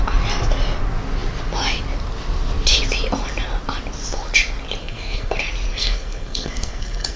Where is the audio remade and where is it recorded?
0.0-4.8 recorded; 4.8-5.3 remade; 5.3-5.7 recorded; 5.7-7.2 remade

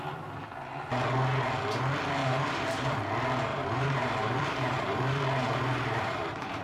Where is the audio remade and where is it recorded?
0.0-2.2 recorded; 2.2-3.0 remade; 3.0-3.5 recorded; 3.5-6.6 remade

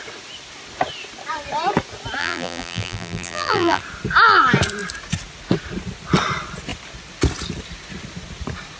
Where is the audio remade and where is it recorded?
0.0-2.2 recorded; 2.2-3.8 remade; 3.8-8.8 recorded

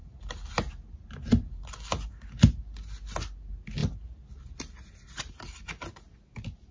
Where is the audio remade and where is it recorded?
0.0-6.7 recorded

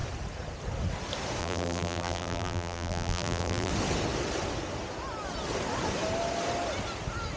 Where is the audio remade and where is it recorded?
0.0-1.4 recorded; 1.4-3.7 remade; 3.7-7.4 recorded